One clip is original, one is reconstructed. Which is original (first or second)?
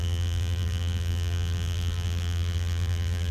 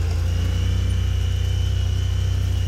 second